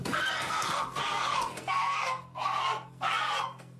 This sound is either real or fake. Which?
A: fake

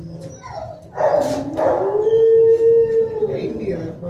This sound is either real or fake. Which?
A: real